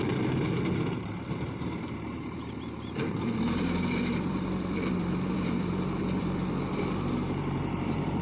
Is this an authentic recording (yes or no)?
no